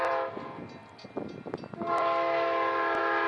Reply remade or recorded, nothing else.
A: recorded